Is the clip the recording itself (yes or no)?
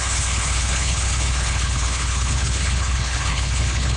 no